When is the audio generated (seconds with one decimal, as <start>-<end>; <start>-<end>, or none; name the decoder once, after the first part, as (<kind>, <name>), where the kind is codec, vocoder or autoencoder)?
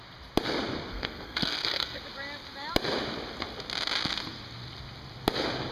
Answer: 0.9-2.0 (codec, SNAC)